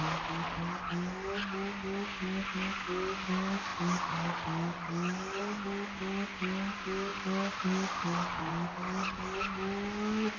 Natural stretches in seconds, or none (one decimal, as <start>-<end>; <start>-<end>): 0.0-10.4